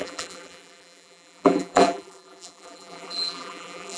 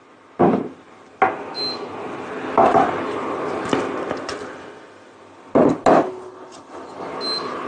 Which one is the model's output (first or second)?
first